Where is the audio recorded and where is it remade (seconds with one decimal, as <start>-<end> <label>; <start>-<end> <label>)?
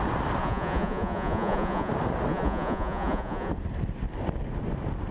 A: 0.0-0.4 recorded; 0.4-1.9 remade; 1.9-2.3 recorded; 2.3-3.5 remade; 3.5-5.1 recorded